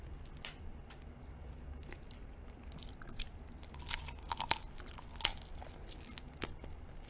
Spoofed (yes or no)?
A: no